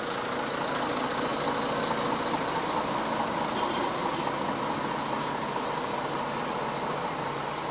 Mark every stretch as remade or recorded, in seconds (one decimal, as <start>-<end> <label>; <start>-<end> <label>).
0.0-7.7 recorded